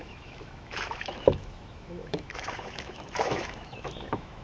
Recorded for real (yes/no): no